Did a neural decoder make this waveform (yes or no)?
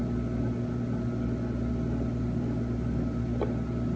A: no